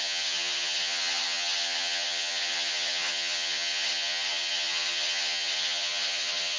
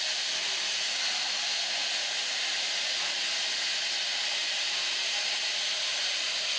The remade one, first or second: first